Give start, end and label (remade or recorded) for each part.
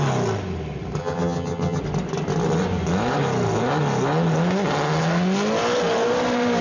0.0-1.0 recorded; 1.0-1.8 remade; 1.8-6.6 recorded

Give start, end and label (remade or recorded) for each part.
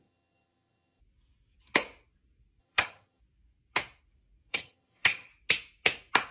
0.0-1.0 remade; 1.0-2.6 recorded; 2.6-3.2 remade; 3.2-4.5 recorded; 4.5-5.3 remade; 5.3-6.3 recorded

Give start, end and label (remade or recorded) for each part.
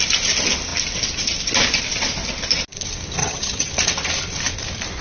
0.0-3.2 recorded; 3.2-3.7 remade; 3.7-5.0 recorded